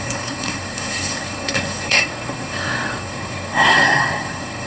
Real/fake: fake